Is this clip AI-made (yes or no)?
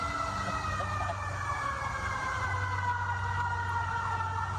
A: no